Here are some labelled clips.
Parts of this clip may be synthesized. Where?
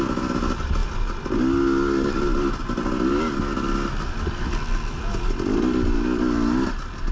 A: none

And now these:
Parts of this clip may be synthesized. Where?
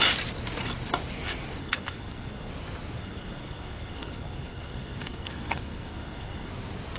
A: 1.6-2.5 (codec, SNAC); 3.0-6.5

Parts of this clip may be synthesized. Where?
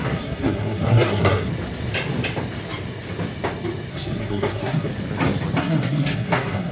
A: 0.0-1.5 (codec, SNAC); 3.9-4.9; 5.6-6.7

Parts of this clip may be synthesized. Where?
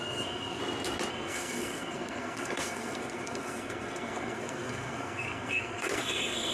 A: 0.0-0.6 (codec, SNAC); 1.1-6.5